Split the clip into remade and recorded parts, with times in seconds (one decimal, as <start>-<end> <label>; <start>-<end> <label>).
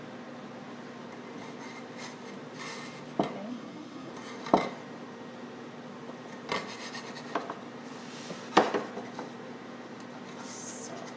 0.0-3.5 recorded; 3.5-4.1 remade; 4.1-11.2 recorded